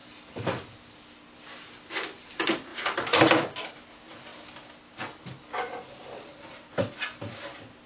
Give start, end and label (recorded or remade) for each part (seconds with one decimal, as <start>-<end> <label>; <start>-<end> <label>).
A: 0.0-7.9 recorded